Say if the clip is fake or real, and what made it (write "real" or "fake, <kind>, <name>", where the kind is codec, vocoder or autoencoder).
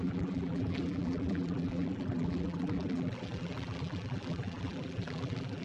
fake, vocoder, BigVGAN v2